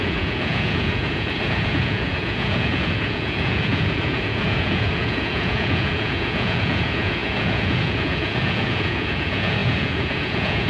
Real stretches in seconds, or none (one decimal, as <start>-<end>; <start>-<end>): none